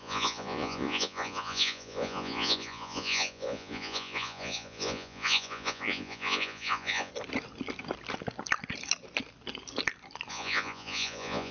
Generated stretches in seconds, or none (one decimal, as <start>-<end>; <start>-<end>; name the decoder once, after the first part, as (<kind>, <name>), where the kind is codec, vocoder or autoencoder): 0.0-7.1 (vocoder, Vocos); 10.3-11.5